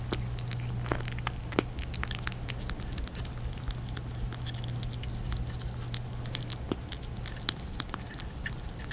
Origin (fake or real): real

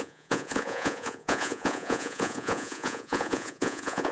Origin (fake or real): fake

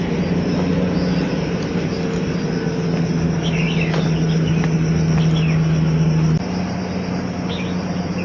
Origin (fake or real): real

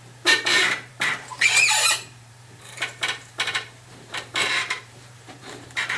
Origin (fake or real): fake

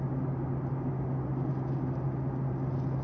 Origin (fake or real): real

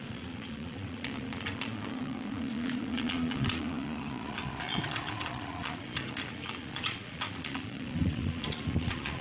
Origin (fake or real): fake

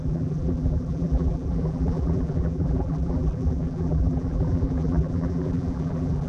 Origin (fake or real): fake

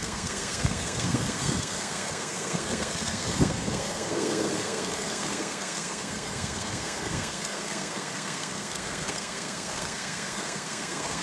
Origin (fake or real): fake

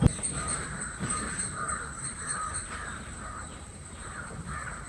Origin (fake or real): fake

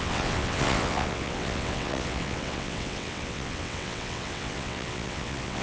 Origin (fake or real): fake